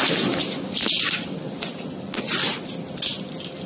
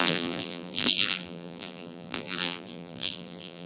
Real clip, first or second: first